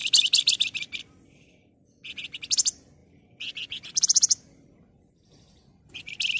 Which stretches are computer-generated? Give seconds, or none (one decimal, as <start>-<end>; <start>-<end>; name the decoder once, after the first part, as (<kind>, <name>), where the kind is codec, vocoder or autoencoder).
none

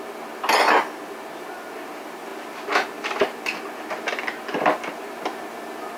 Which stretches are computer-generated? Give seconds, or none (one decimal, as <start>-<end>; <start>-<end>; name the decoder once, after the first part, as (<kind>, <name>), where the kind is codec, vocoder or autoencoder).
none

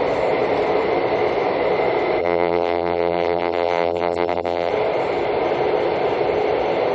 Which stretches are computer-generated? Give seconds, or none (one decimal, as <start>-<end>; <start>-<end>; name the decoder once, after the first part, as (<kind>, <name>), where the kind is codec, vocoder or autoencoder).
2.2-4.7 (vocoder, BigVGAN v2)

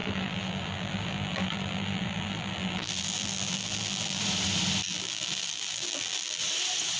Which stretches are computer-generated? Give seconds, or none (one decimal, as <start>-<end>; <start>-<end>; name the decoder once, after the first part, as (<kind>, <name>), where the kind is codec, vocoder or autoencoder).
0.0-4.2 (vocoder, BigVGAN v2); 4.8-6.4

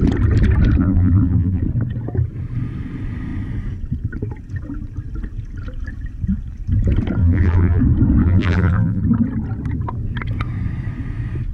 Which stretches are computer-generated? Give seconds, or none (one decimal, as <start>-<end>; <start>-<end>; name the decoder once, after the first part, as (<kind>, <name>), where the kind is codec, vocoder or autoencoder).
0.8-1.6 (vocoder, BigVGAN v2); 7.2-7.8; 8.2-9.0